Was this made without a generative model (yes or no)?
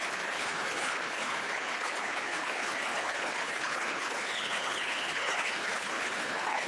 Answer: no